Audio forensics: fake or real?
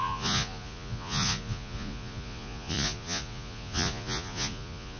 fake